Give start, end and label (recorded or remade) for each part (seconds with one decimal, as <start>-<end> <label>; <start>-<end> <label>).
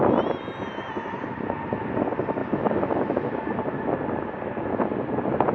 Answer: 0.0-2.4 recorded; 2.4-3.6 remade; 3.6-5.5 recorded